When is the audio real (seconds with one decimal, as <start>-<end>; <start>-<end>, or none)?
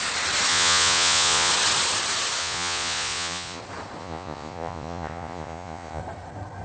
0.0-0.5; 1.5-2.4; 3.6-4.0; 6.0-6.6